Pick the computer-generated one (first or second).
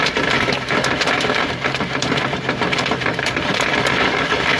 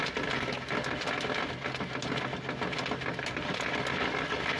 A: first